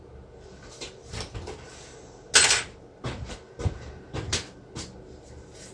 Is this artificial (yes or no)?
no